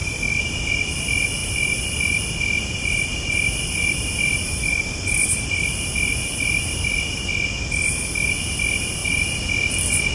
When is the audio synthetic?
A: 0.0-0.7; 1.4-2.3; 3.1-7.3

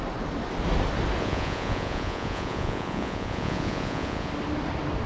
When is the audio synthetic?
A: 1.2-4.3

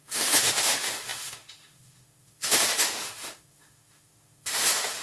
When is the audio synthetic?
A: 0.0-5.0

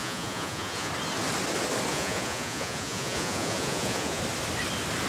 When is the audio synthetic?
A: 0.0-0.9; 1.9-4.2

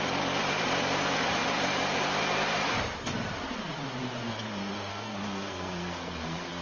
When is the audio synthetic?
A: 4.9-6.6

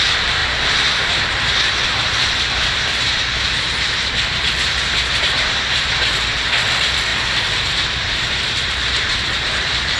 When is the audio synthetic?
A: 0.0-10.0

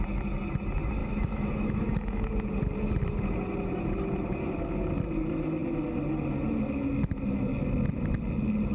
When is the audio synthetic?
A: 1.0-2.3

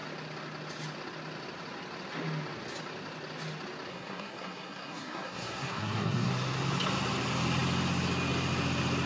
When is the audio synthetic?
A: 3.9-6.3